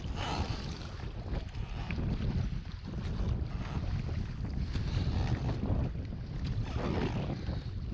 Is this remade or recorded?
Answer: recorded